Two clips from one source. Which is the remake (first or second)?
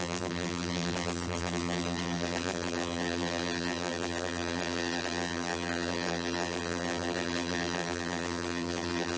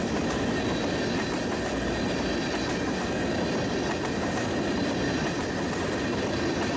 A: first